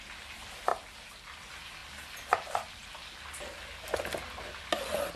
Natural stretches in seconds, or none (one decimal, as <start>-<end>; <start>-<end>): 0.0-5.2